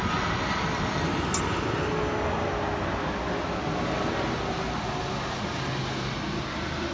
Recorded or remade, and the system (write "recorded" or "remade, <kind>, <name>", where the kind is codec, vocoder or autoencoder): recorded